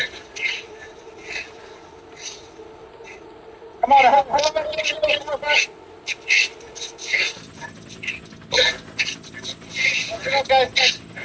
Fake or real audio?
real